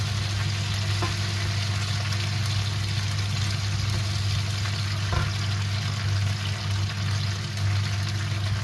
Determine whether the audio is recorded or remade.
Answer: recorded